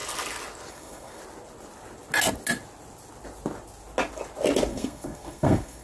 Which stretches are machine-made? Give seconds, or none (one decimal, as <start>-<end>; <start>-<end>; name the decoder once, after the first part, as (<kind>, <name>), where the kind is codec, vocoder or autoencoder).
0.7-1.2 (codec, SNAC); 4.7-5.8